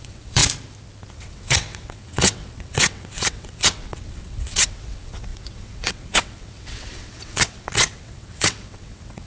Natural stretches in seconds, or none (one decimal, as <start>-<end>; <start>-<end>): 0.4-1.1